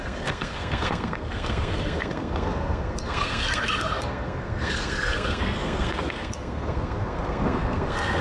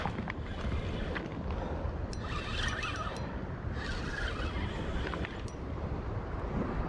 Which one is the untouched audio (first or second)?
second